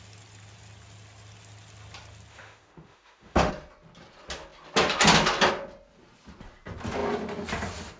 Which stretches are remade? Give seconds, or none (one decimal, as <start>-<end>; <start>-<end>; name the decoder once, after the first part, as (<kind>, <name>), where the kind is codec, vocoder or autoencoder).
2.3-3.5 (autoencoder, DAC-VAE)